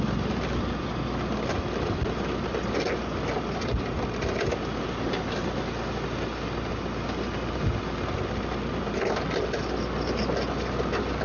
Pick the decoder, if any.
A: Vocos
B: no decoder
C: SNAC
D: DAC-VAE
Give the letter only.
B